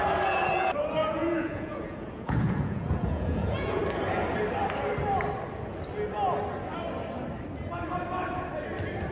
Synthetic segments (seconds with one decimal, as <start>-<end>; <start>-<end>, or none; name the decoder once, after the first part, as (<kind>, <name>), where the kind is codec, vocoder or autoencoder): 1.0-3.8 (vocoder, Vocos)